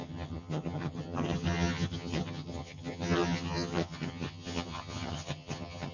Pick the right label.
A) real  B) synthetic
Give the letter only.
B